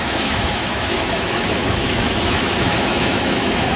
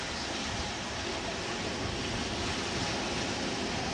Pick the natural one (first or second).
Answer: second